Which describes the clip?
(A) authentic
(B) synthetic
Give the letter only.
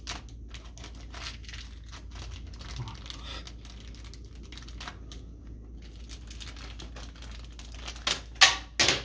A